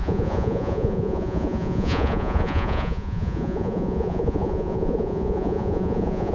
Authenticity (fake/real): fake